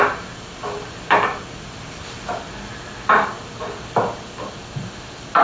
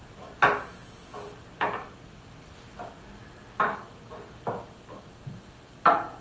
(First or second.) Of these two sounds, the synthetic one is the first